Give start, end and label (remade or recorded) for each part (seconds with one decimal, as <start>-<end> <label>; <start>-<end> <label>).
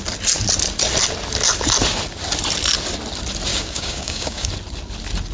0.0-3.5 recorded; 3.5-4.5 remade; 4.5-5.3 recorded